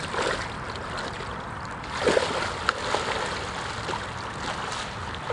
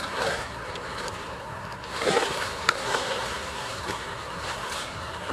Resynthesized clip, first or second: second